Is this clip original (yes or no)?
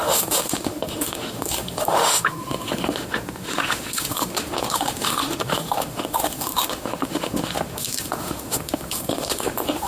no